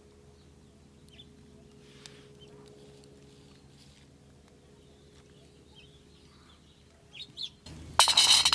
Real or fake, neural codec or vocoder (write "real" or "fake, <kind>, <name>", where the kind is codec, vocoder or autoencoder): real